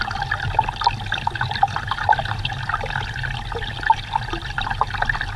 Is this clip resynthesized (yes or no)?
no